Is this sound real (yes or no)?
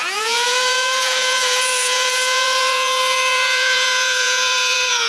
no